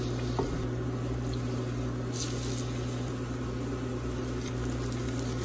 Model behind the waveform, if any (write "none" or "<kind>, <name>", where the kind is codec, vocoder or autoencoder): none